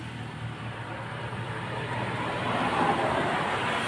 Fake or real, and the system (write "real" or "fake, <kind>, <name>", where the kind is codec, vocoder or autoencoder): real